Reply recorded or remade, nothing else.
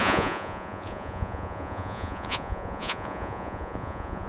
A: remade